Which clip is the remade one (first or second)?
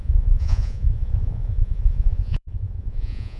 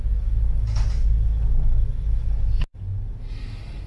first